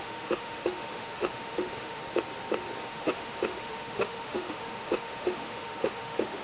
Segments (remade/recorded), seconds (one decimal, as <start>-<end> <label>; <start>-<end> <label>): 0.0-2.0 remade; 2.0-2.8 recorded; 2.8-6.4 remade